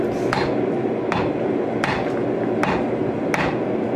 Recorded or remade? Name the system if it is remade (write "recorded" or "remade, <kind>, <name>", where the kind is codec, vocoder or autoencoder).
recorded